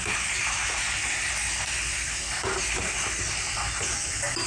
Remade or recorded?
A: recorded